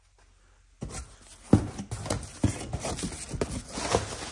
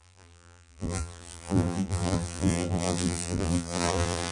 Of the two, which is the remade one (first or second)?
second